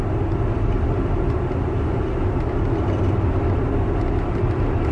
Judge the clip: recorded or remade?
recorded